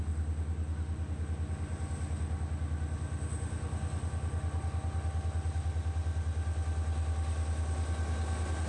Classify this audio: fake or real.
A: real